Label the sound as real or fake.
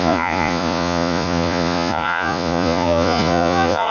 fake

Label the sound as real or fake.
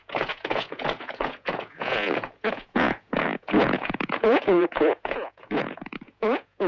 fake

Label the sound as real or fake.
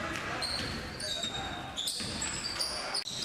real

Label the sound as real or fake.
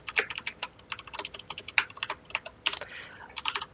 real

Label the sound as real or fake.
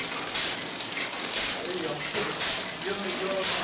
real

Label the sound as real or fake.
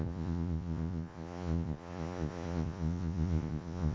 fake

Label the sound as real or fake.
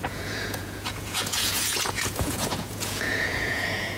fake